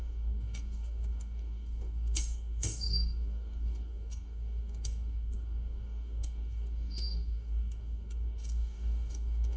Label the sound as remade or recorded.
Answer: remade